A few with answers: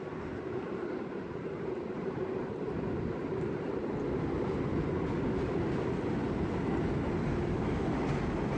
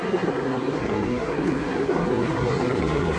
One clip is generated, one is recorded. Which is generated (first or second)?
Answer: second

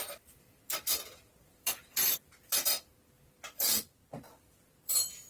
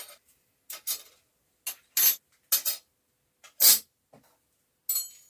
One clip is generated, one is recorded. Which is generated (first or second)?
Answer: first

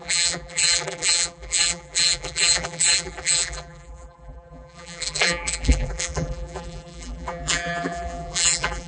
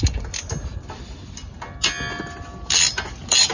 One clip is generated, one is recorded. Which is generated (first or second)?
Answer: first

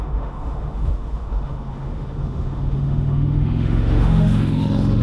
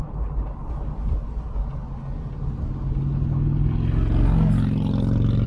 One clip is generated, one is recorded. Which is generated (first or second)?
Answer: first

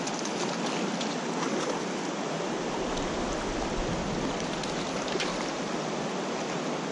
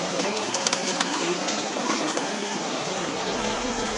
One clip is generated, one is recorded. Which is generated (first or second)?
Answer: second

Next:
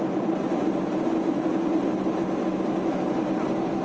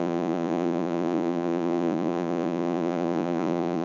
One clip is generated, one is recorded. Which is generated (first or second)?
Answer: second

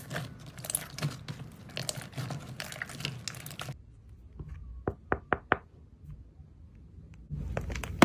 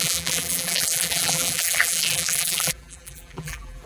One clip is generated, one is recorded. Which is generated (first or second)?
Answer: second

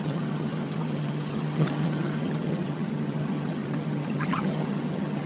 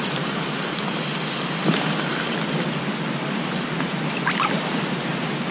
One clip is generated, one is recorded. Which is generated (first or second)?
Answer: first